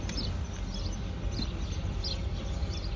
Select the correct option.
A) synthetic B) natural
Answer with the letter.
B